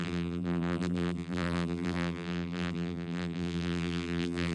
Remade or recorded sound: remade